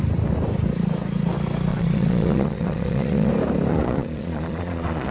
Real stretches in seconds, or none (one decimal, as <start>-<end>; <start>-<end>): 0.0-1.7; 3.3-3.7